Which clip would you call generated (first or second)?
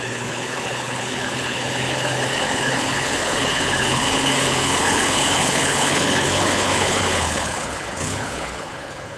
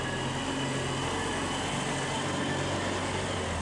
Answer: first